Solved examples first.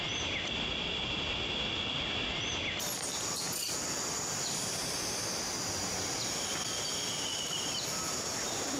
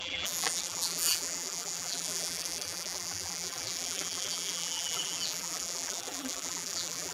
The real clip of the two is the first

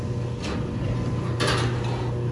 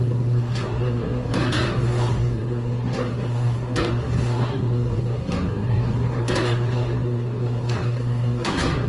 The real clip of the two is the first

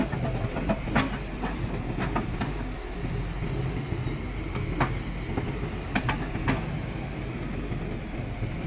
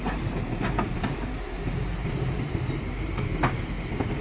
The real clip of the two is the first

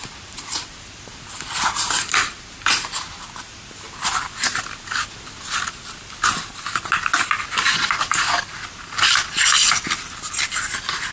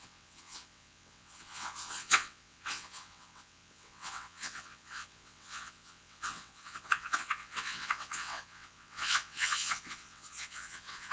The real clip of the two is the first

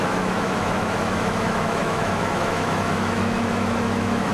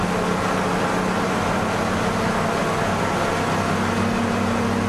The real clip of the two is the second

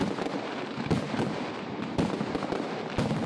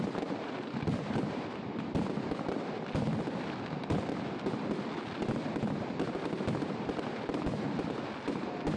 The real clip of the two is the first